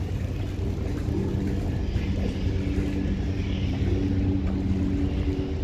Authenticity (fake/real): real